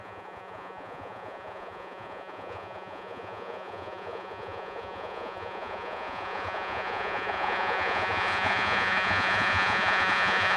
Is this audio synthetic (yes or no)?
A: yes